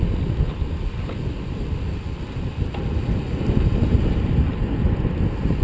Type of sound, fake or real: real